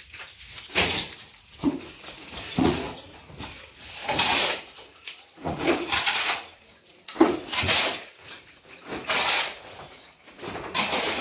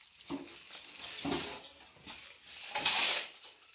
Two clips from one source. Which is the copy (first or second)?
first